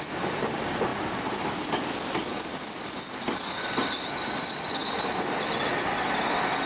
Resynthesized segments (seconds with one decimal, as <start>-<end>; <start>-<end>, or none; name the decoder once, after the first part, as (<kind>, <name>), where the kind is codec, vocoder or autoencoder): none